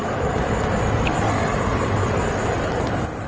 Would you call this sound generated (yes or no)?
no